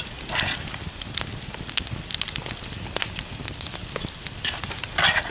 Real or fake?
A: real